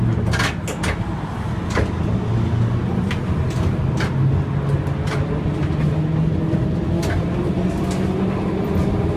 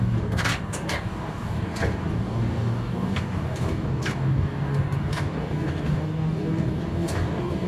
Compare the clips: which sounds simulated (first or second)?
second